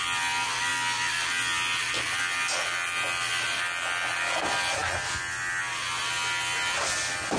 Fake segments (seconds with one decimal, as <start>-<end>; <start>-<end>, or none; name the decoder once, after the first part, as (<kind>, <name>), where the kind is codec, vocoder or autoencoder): none